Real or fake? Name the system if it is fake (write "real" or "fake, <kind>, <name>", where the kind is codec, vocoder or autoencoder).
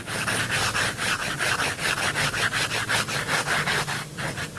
real